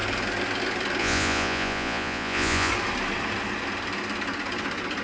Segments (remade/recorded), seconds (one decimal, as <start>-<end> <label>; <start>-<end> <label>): 0.0-1.0 recorded; 1.0-2.7 remade; 2.7-5.0 recorded